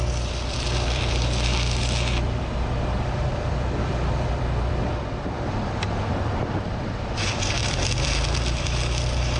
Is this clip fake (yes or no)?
yes